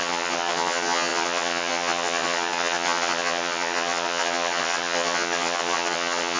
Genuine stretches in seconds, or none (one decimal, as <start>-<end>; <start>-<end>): none